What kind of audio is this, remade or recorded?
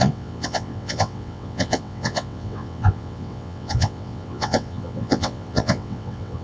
remade